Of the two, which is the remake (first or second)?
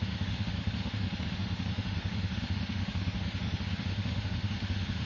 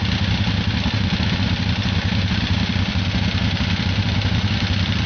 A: first